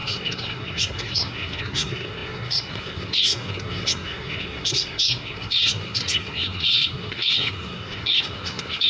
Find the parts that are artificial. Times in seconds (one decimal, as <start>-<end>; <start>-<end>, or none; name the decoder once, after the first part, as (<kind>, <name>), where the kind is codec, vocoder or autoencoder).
0.0-8.9 (codec, SNAC)